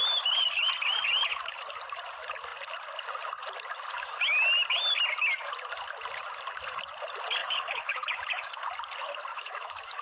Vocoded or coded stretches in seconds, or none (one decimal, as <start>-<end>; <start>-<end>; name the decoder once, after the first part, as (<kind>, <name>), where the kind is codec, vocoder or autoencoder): 7.4-8.7 (autoencoder, DAC-VAE); 9.3-10.0